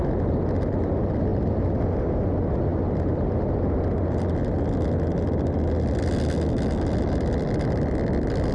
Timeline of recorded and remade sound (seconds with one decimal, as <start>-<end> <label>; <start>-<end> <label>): 0.0-8.5 recorded

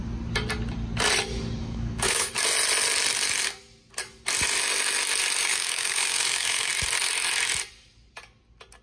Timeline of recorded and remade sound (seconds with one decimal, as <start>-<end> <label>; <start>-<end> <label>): 0.0-1.6 recorded; 1.6-2.3 remade; 2.3-5.5 recorded; 5.5-6.7 remade; 6.7-8.8 recorded